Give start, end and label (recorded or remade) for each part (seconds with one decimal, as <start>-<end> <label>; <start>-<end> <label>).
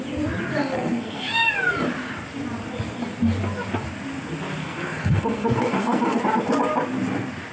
0.0-0.6 recorded; 0.6-1.5 remade; 1.5-4.6 recorded; 4.6-6.2 remade; 6.2-7.5 recorded